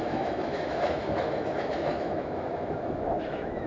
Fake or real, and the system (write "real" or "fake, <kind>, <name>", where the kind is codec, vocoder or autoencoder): fake, autoencoder, DAC-VAE